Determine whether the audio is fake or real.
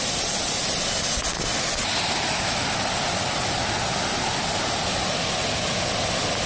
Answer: real